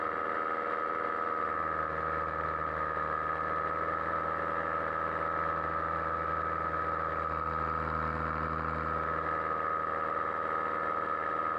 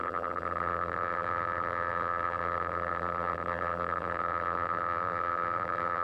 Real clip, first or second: first